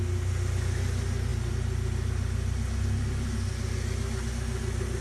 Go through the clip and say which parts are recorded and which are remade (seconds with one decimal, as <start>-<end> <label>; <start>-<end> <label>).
0.0-5.0 recorded